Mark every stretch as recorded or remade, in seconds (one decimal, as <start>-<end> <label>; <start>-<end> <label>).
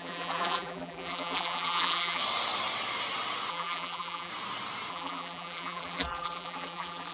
0.0-2.2 remade; 2.2-3.5 recorded; 3.5-4.3 remade; 4.3-4.9 recorded; 4.9-7.1 remade